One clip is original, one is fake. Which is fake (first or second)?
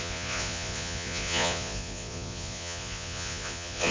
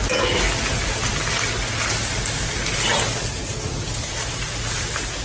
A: first